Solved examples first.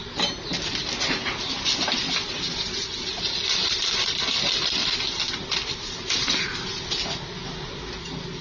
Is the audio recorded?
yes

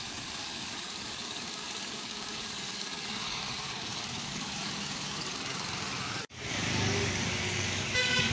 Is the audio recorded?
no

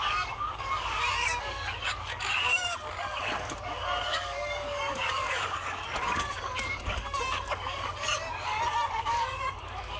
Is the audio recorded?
no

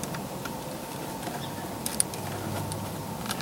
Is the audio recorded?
yes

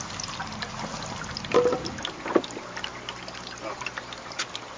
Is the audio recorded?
yes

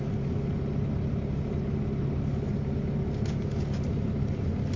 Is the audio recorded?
yes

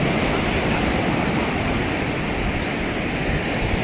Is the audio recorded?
yes